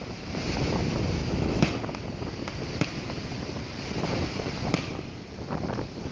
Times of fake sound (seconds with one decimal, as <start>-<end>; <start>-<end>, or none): 1.2-1.7